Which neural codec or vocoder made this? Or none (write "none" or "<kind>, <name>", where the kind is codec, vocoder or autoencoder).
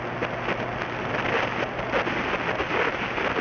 none